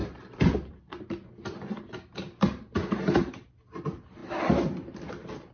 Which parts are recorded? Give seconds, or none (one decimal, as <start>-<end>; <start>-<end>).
0.0-5.5

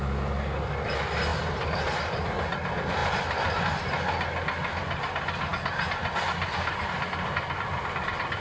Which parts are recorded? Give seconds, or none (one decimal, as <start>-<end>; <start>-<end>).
0.0-8.4

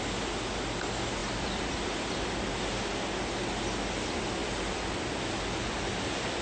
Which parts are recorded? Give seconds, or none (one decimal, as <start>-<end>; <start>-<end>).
0.0-1.2; 2.5-4.4; 4.9-6.4

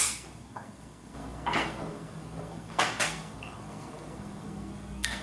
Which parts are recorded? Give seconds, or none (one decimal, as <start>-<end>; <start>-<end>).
none